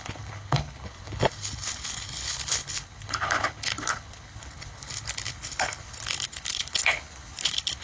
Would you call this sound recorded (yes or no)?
no